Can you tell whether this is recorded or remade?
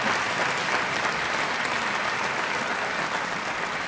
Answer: recorded